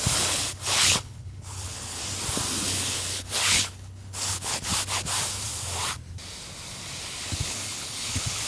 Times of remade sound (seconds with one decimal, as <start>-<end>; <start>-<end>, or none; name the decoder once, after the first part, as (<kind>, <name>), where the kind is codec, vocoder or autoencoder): 0.0-2.0 (codec, HILCodec); 2.6-4.7; 7.3-8.5